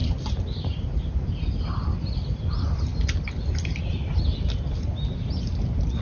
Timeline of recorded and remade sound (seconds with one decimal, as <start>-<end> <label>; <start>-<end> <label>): 0.0-6.0 recorded